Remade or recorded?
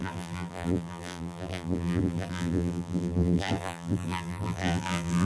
remade